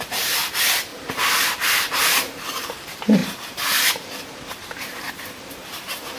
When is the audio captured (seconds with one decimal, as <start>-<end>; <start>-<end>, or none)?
0.9-1.7